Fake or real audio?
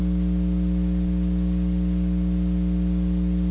real